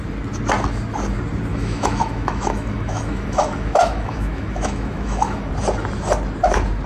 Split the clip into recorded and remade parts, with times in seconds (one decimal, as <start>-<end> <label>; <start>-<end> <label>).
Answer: 0.0-1.5 recorded; 1.5-5.5 remade; 5.5-6.9 recorded